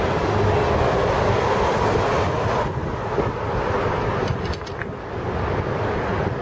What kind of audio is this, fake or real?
real